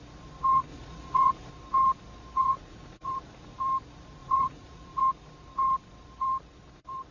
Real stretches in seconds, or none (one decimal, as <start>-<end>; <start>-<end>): 0.0-0.7; 1.5-2.4; 3.2-4.2; 5.0-7.1